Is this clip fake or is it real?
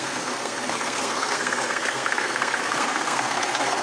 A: fake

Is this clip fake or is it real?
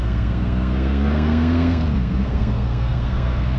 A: fake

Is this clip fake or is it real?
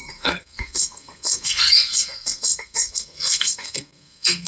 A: fake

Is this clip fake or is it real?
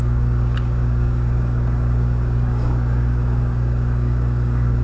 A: fake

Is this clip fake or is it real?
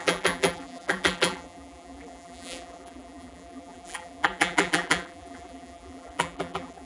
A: fake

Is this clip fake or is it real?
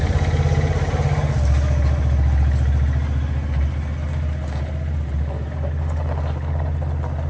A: real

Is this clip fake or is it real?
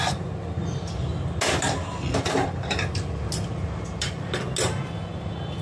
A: real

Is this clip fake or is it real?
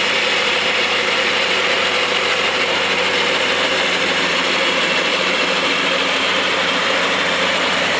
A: fake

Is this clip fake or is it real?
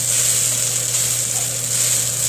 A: real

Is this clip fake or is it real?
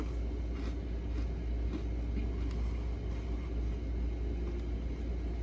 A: real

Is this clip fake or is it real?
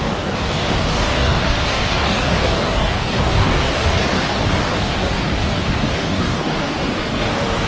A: fake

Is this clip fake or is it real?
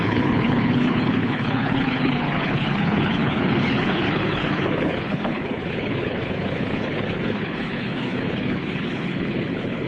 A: fake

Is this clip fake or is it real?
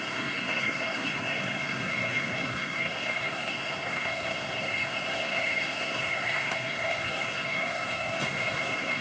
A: fake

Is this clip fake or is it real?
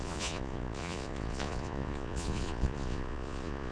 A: fake